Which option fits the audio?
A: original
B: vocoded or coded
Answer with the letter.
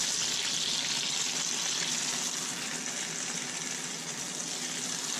A